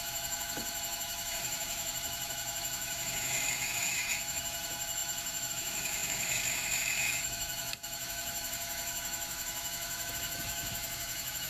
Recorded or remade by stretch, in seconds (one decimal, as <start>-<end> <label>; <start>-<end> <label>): 0.0-11.5 remade